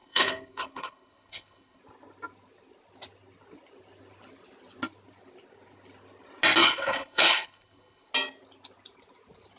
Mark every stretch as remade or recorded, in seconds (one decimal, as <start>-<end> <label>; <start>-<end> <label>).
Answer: 0.0-1.8 remade; 1.8-6.6 recorded; 6.6-8.1 remade; 8.1-9.6 recorded